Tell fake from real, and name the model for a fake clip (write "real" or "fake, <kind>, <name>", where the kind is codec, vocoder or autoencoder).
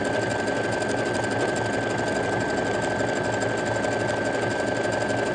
real